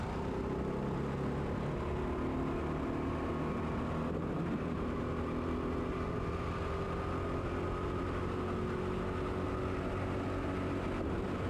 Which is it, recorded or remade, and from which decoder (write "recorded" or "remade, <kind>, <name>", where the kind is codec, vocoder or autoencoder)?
recorded